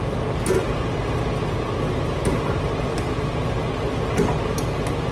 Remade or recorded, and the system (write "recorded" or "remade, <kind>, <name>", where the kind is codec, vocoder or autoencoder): recorded